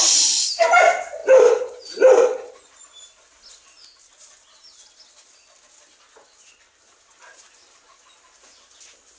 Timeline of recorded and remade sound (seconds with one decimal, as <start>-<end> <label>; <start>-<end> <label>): 0.0-9.2 recorded